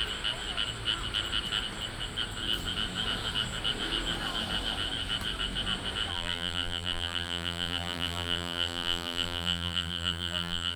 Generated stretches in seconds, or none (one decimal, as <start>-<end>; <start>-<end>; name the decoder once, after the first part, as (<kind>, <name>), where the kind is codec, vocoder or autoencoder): 6.1-10.8 (vocoder, BigVGAN v2)